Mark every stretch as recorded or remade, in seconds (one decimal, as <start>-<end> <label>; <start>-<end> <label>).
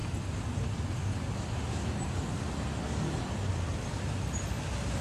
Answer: 0.0-5.0 recorded